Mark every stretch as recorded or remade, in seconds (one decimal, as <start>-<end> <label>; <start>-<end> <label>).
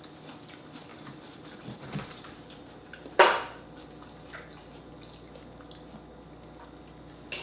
0.0-0.9 recorded; 0.9-4.9 remade; 4.9-7.4 recorded